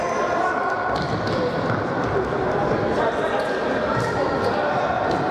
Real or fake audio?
real